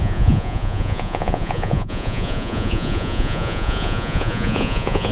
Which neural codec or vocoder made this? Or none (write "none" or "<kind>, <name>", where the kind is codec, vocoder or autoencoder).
vocoder, Vocos